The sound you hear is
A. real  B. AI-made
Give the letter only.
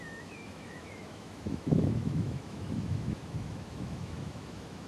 B